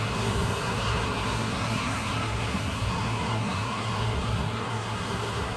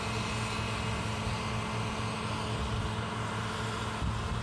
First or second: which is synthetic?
first